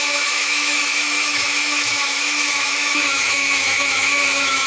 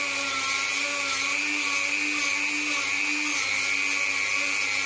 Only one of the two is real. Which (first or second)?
second